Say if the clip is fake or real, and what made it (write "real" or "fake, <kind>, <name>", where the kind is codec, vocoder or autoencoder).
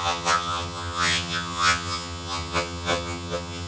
fake, vocoder, HiFi-GAN